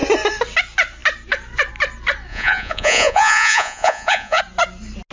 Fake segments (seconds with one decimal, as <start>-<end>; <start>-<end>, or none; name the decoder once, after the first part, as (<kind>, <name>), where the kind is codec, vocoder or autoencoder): 2.3-4.4 (vocoder, Vocos)

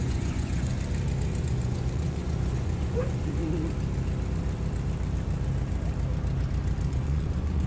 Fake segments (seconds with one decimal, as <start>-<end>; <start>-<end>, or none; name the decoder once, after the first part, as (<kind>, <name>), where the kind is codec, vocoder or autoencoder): 0.0-0.7 (vocoder, Vocos); 1.4-3.4; 6.9-7.7

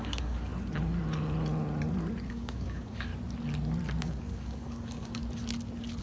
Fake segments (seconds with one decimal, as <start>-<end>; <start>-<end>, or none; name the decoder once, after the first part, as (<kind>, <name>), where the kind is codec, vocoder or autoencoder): 0.0-0.5 (codec, DAC); 2.3-3.1; 4.0-5.2

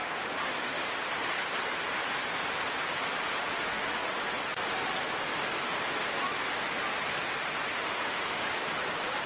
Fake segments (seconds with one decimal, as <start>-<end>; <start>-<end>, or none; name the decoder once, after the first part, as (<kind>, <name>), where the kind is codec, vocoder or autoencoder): 7.7-8.5 (autoencoder, DAC-VAE)

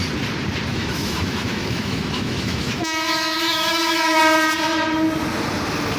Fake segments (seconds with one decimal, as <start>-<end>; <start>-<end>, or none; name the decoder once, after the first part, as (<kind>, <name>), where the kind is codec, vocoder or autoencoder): 0.7-4.2 (autoencoder, DAC-VAE)